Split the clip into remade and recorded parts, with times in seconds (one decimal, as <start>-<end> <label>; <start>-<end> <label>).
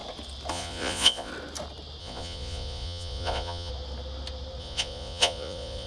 0.0-0.5 recorded; 0.5-1.3 remade; 1.3-2.0 recorded; 2.0-3.7 remade; 3.7-4.6 recorded; 4.6-5.9 remade